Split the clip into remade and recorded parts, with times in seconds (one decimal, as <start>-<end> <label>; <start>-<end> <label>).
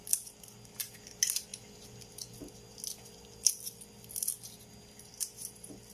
0.0-5.9 recorded